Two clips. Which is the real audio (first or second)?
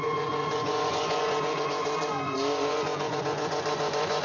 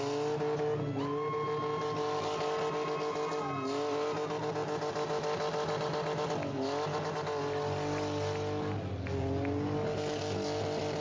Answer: second